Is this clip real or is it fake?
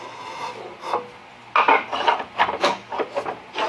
real